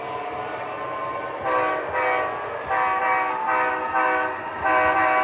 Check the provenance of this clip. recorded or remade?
recorded